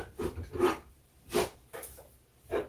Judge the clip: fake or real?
fake